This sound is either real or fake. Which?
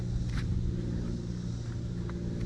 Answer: real